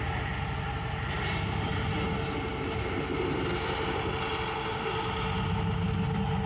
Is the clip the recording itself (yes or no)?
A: yes